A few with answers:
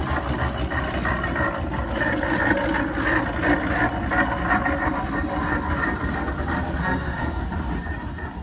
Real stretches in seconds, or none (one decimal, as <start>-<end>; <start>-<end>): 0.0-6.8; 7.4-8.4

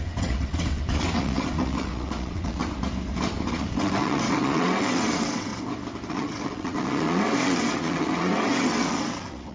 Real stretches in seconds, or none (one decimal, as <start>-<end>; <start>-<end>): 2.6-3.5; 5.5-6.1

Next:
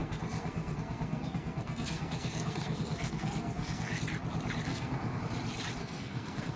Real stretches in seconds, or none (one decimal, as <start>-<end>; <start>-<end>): 4.0-4.7; 5.2-5.8

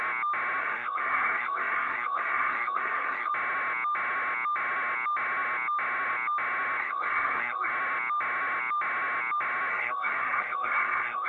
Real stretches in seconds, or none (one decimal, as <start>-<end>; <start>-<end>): 0.0-0.6; 3.3-6.8; 7.7-9.7